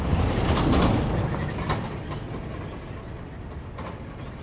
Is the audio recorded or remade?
recorded